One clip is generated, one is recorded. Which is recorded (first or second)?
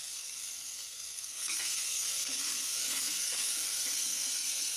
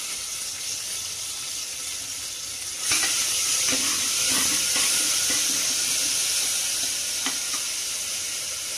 second